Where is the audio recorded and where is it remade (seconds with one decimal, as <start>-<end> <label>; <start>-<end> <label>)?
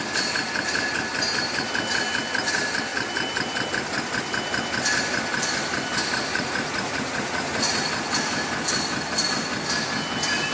0.0-6.3 recorded; 6.3-7.9 remade; 7.9-10.5 recorded